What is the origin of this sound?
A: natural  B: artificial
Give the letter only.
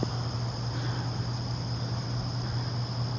A